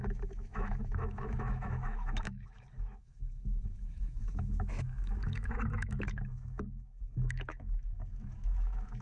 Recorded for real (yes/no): no